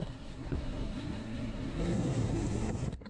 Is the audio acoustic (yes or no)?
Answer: no